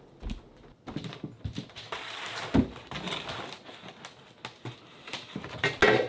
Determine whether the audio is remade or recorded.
recorded